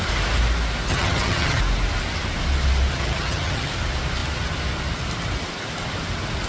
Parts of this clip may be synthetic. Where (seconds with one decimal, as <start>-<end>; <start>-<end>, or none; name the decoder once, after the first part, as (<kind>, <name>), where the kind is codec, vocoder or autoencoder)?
0.9-1.6 (vocoder, HiFi-GAN); 2.9-3.7